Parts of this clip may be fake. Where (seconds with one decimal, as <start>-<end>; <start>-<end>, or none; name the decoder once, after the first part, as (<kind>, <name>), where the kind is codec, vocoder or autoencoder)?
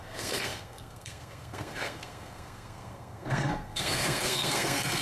0.0-5.0 (codec, SNAC)